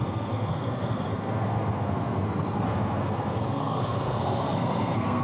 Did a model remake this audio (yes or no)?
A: yes